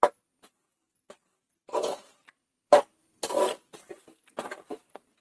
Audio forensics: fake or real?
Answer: real